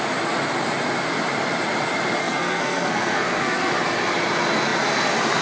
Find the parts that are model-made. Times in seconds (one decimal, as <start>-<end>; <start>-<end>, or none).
2.2-3.7